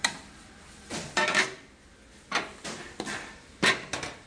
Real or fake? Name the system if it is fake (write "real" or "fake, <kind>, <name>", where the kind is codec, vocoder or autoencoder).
real